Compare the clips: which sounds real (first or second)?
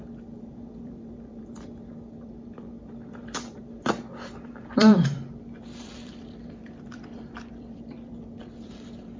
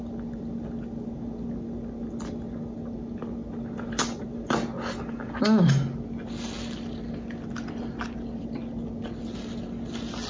second